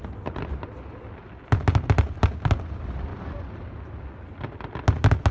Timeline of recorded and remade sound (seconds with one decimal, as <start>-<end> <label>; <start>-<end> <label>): 0.0-5.3 recorded